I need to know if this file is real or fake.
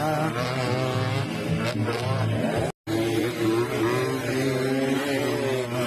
real